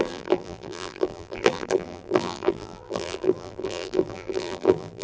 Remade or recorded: remade